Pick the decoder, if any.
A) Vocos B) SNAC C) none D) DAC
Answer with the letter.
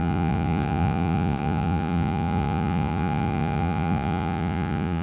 A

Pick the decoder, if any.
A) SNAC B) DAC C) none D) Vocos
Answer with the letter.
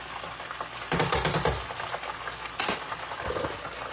C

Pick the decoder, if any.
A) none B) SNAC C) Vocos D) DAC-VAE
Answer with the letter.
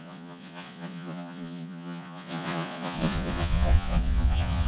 C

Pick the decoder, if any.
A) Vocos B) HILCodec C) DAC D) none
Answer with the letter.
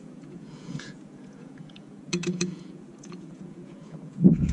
A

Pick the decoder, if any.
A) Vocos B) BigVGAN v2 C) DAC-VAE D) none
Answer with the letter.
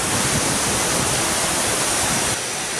D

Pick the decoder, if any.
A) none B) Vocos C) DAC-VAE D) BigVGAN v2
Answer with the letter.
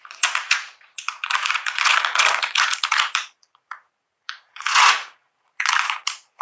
B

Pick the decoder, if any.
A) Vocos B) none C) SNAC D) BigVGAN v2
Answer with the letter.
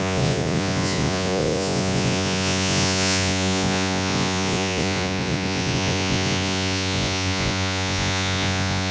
A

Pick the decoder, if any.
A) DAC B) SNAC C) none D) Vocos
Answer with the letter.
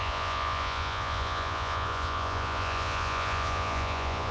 D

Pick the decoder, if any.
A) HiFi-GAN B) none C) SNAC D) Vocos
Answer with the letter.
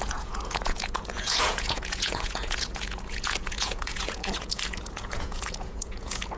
D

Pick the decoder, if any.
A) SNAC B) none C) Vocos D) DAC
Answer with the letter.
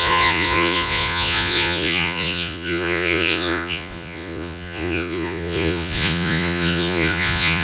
C